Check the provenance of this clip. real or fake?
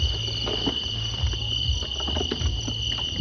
real